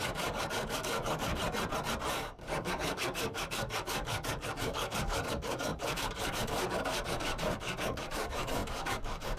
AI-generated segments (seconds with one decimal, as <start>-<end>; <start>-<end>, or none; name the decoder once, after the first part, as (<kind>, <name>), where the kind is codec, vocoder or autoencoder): 0.0-1.4 (codec, DAC); 2.1-9.4